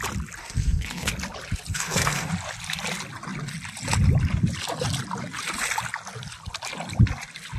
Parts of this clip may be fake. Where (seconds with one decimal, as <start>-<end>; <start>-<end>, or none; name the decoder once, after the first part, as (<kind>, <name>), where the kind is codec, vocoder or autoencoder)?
0.4-1.1 (codec, SNAC); 1.7-2.3